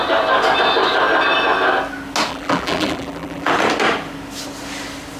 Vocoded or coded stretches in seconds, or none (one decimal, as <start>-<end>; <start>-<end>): 2.3-3.5

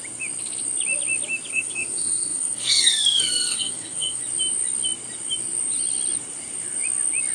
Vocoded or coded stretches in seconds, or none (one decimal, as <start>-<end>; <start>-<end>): 1.5-4.2

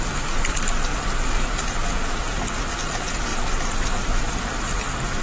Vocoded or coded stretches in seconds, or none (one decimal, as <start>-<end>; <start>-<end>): none

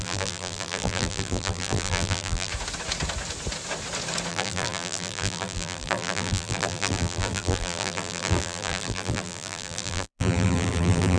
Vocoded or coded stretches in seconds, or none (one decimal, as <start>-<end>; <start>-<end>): 0.0-2.5; 4.3-11.2

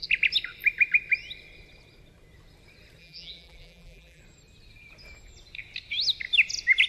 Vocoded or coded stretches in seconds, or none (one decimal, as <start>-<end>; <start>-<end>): 3.0-4.2

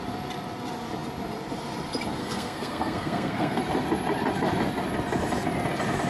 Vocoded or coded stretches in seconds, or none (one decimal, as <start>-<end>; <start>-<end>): 2.2-3.6

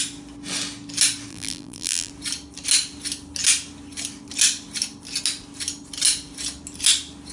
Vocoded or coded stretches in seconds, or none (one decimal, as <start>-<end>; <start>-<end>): 1.3-2.1

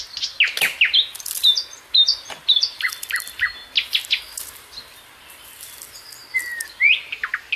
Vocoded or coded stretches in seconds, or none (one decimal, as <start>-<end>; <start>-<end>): 2.1-3.4